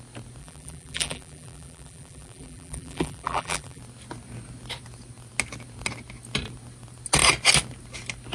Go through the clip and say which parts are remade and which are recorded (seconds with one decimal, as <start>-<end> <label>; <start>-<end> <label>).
0.0-0.4 recorded; 0.4-3.8 remade; 3.8-8.3 recorded